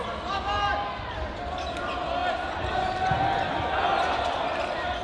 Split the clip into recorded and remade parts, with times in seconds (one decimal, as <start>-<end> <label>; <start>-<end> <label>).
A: 0.0-5.0 recorded